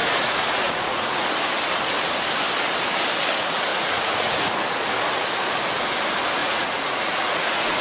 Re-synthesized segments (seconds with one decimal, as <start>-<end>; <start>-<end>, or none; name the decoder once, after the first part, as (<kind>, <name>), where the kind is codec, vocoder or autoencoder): 0.0-1.3 (vocoder, Vocos); 3.7-4.6; 6.4-7.8